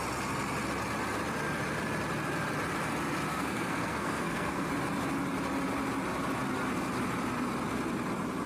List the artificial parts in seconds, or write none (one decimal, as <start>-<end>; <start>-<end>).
3.3-4.7